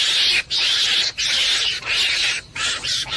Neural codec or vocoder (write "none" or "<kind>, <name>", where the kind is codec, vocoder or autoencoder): none